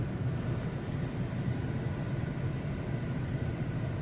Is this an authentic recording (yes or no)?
yes